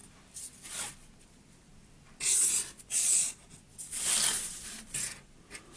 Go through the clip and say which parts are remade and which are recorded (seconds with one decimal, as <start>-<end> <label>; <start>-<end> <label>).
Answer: 0.0-5.8 recorded